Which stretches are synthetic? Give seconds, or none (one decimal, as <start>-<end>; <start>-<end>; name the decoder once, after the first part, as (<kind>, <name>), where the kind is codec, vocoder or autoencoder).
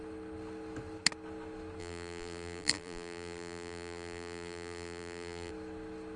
1.8-5.5 (vocoder, BigVGAN v2)